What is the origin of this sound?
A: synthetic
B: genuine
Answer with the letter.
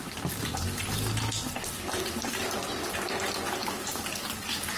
B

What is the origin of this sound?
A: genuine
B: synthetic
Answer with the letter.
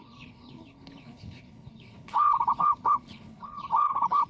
B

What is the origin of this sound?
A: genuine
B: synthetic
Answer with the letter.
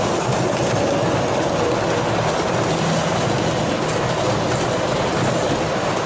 A